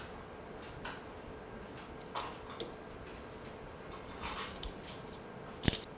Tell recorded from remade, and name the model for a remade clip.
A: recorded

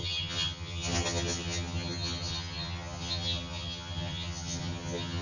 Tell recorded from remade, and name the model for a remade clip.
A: remade, vocoder, HiFi-GAN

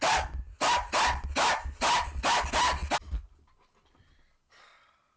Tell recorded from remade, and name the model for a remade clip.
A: recorded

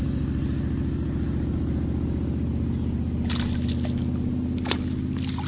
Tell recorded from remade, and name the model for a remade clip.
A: recorded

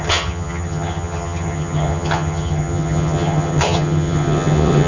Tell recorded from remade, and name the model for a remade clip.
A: remade, vocoder, HiFi-GAN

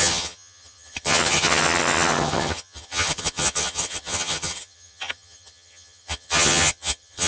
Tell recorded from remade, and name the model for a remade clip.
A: remade, vocoder, HiFi-GAN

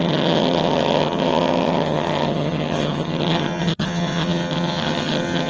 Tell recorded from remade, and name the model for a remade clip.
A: remade, vocoder, HiFi-GAN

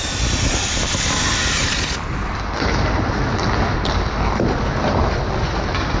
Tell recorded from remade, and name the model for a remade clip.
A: recorded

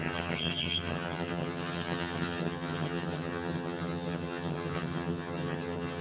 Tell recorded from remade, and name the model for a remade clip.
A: remade, vocoder, HiFi-GAN